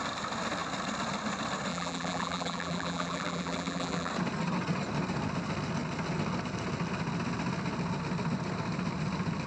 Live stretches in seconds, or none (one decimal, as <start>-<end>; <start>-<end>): 0.0-1.7; 4.1-9.5